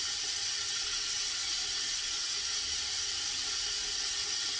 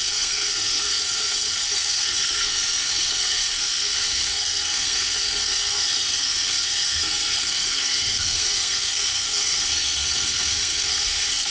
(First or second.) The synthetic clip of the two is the second